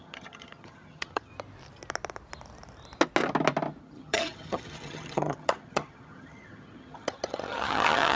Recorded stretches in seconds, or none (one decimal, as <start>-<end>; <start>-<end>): 1.3-3.8